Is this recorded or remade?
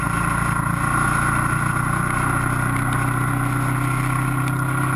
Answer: recorded